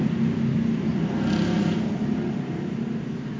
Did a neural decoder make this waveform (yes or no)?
no